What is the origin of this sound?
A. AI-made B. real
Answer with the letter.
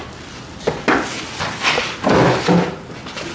B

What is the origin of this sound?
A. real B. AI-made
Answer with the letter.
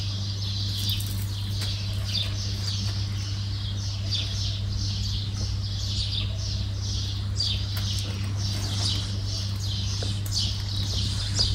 A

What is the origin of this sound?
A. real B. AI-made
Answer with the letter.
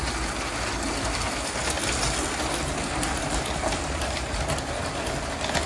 A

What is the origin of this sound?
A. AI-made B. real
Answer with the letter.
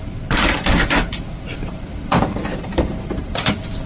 A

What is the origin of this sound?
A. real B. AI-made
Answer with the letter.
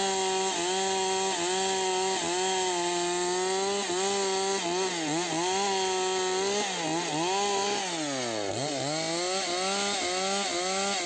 A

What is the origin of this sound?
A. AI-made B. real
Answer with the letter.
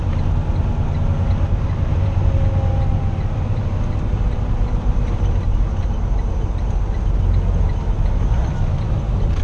B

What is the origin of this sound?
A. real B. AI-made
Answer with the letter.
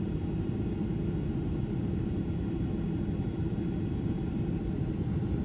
B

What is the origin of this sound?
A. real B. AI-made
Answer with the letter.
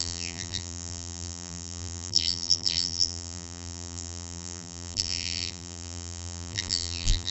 B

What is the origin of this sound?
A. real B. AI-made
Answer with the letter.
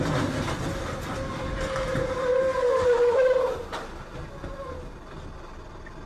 A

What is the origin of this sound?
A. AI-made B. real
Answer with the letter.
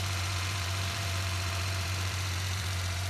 A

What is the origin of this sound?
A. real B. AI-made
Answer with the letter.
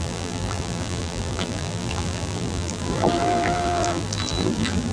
B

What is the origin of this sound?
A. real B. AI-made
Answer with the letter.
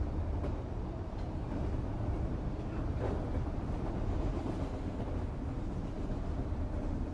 A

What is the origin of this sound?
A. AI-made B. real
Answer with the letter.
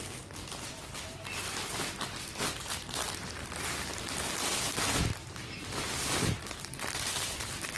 B